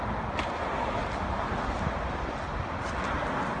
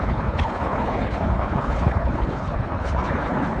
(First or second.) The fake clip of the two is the second